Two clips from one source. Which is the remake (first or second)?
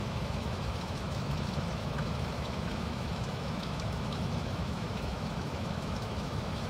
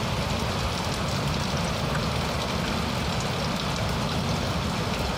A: first